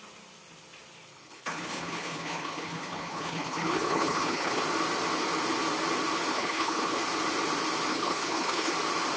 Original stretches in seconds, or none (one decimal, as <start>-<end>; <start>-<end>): 0.0-1.1; 4.6-6.3; 7.0-7.9; 8.7-9.2